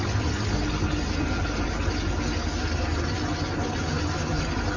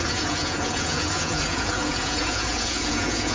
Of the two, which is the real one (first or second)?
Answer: first